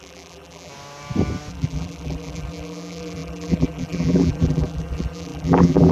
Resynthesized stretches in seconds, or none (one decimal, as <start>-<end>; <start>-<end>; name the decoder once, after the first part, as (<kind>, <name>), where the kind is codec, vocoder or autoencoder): 0.0-0.7 (vocoder, BigVGAN v2); 1.5-5.9